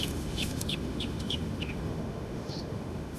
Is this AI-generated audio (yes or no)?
yes